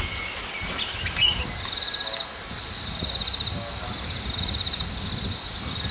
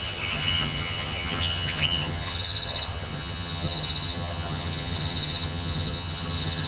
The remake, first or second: second